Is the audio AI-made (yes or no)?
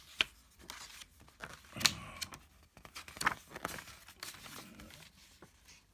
no